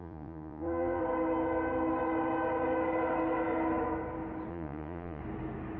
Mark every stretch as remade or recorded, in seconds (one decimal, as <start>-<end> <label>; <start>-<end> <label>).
0.0-1.0 remade; 1.0-4.5 recorded; 4.5-5.2 remade; 5.2-5.8 recorded